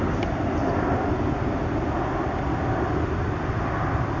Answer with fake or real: real